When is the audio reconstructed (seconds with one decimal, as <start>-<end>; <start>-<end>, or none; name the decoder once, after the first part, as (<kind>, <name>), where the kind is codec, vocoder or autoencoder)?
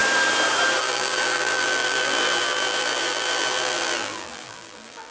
0.8-5.1 (vocoder, BigVGAN v2)